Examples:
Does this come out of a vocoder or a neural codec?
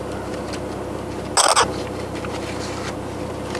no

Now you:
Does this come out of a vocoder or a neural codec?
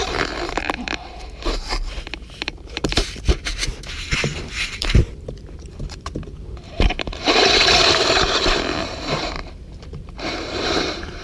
yes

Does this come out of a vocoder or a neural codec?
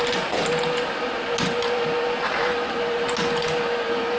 no